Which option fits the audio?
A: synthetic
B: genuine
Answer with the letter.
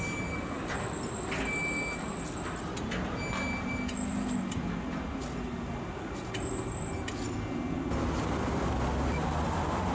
B